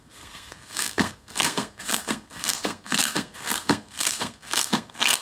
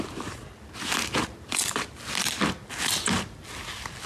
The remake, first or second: first